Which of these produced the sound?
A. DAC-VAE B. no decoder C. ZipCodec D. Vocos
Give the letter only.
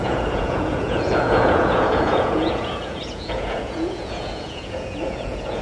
D